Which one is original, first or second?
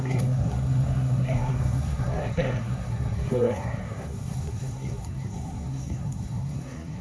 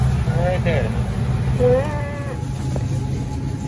second